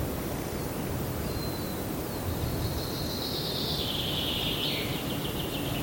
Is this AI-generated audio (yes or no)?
no